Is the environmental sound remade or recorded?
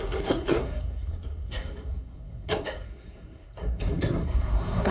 remade